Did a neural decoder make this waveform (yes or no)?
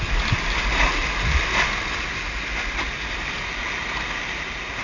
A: no